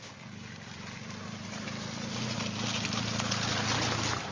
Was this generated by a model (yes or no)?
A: no